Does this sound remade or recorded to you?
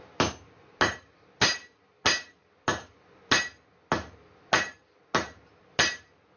recorded